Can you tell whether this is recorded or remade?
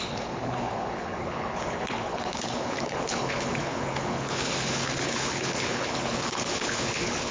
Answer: remade